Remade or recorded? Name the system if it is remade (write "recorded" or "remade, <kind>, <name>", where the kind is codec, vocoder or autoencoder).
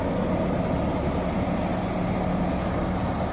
recorded